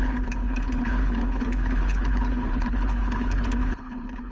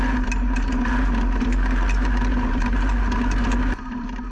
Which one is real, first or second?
second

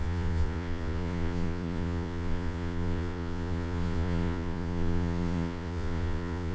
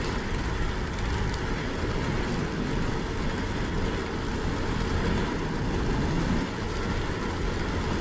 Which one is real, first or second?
second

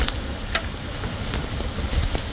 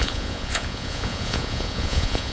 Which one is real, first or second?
first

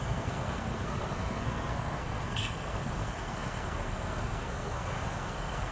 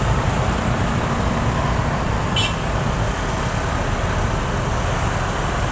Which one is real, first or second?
second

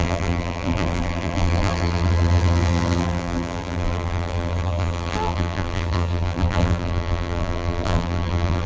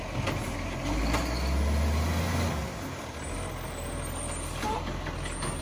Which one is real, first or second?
second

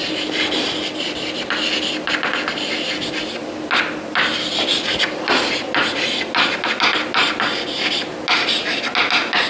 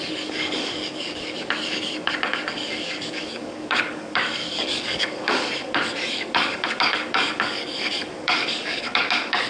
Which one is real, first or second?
first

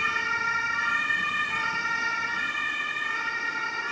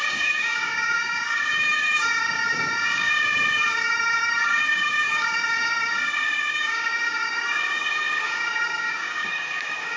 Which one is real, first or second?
first